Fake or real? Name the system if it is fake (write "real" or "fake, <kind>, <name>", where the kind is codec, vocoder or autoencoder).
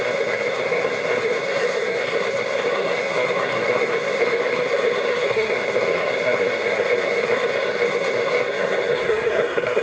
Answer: fake, codec, SNAC